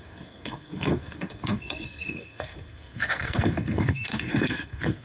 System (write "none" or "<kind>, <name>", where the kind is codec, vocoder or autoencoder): codec, SNAC